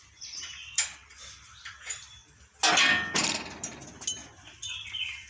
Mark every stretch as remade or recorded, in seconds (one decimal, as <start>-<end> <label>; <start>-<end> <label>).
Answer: 0.0-5.3 recorded